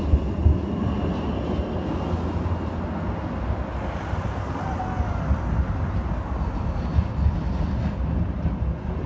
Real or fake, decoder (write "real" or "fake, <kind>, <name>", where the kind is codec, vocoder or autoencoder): real